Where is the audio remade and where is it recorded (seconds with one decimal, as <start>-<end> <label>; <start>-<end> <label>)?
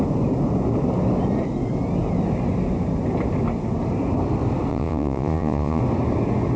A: 0.0-4.7 recorded; 4.7-5.8 remade; 5.8-6.6 recorded